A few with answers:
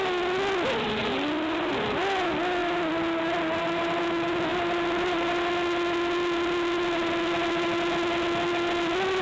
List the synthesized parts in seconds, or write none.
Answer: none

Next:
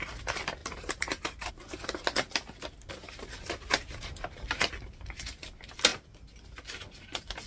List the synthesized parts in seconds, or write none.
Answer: 0.6-1.5 (vocoder, BigVGAN v2); 3.0-4.7